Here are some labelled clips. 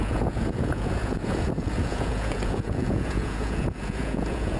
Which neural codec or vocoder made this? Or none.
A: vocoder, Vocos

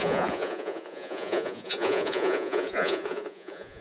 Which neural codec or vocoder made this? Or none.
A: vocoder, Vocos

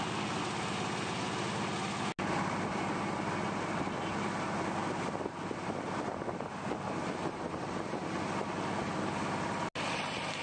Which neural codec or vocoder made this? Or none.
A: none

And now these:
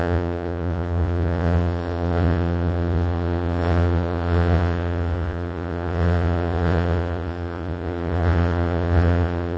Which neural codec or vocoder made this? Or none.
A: vocoder, Vocos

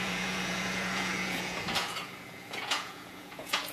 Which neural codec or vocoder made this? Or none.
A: vocoder, Vocos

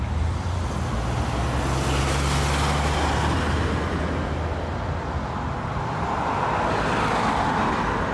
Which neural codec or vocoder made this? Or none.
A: none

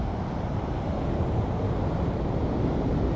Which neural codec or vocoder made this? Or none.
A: none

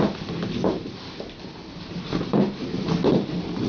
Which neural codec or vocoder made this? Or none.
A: none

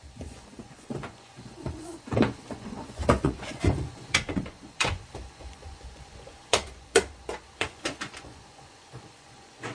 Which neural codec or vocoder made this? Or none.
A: vocoder, Vocos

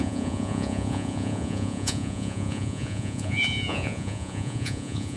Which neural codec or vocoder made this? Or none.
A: vocoder, Vocos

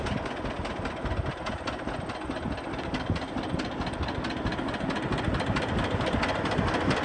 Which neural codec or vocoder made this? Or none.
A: none